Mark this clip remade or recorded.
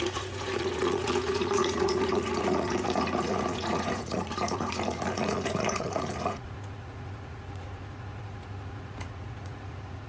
remade